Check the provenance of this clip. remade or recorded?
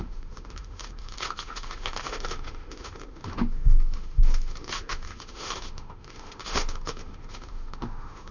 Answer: remade